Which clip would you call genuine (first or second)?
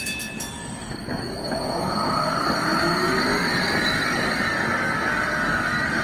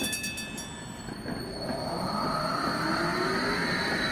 second